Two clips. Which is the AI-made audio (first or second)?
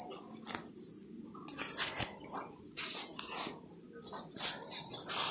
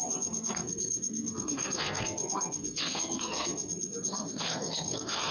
second